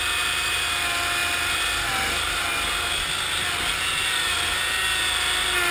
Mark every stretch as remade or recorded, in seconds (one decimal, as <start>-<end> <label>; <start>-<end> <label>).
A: 0.0-5.7 recorded